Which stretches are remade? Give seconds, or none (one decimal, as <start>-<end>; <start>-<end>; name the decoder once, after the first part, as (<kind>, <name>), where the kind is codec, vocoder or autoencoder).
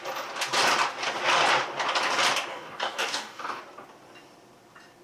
2.5-3.6 (codec, DAC)